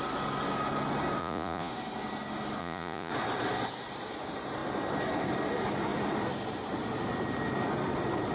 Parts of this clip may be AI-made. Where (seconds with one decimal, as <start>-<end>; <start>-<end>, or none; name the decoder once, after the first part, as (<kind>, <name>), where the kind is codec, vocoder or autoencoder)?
1.2-1.7 (vocoder, Vocos); 2.6-3.1